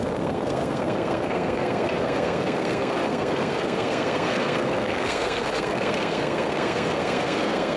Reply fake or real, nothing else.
fake